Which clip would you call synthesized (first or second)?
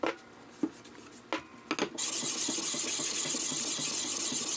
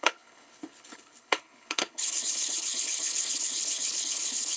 second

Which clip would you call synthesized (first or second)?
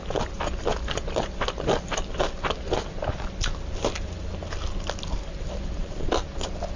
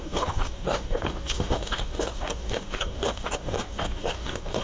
second